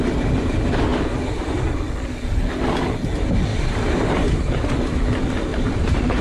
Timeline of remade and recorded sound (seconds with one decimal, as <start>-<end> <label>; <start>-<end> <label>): 0.0-3.5 recorded; 3.5-5.0 remade; 5.0-5.5 recorded; 5.5-6.2 remade